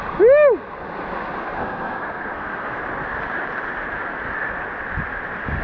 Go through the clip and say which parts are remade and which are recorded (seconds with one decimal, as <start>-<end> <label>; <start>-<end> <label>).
0.0-1.4 recorded; 1.4-2.8 remade; 2.8-5.6 recorded